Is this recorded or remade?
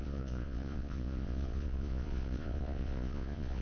remade